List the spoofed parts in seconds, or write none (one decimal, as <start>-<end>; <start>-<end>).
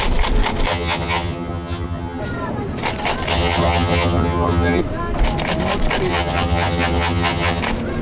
0.7-2.2; 3.3-4.8; 6.1-7.6